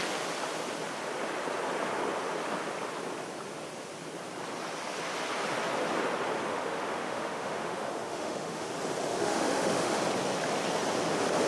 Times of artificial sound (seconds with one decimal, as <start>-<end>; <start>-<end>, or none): 6.5-8.7; 9.1-10.0